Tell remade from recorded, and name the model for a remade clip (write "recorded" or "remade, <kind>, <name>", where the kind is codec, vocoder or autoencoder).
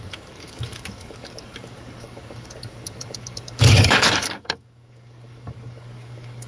remade, codec, DAC